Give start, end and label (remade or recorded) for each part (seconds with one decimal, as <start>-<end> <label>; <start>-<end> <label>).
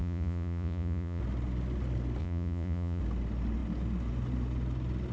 0.0-1.2 remade; 1.2-2.2 recorded; 2.2-3.0 remade; 3.0-5.1 recorded